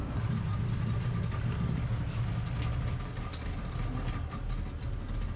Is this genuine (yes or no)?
yes